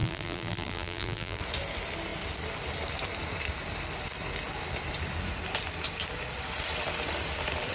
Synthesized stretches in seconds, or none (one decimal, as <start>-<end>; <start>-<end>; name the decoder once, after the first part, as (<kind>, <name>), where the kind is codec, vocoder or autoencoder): 0.0-1.4 (vocoder, BigVGAN v2)